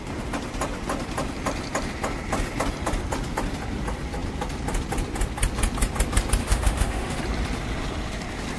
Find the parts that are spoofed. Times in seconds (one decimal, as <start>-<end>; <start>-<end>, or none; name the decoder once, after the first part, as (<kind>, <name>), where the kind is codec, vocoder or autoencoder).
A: 6.4-7.2 (autoencoder, DAC-VAE)